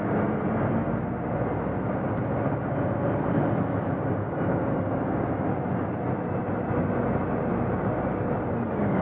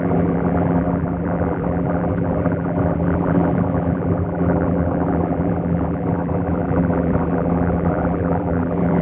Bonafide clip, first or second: first